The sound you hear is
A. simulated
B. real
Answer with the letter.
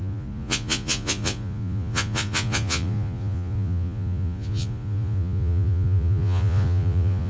A